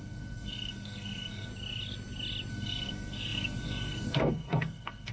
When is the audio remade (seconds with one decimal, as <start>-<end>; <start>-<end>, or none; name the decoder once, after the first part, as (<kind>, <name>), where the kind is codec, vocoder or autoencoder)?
0.0-1.5 (codec, SNAC); 2.5-5.1